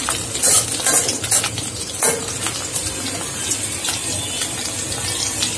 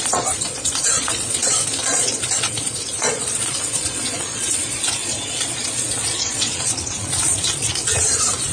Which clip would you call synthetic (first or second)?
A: second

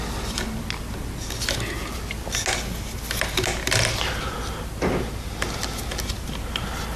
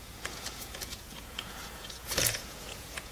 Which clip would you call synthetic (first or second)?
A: second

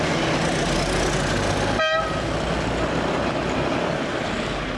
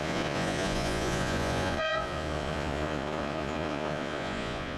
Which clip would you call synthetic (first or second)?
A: second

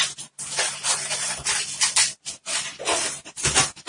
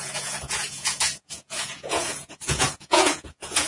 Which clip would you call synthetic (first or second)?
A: second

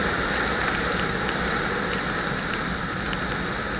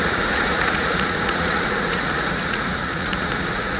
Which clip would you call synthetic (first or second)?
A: second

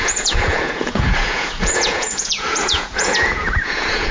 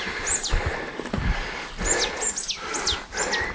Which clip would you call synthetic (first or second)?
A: first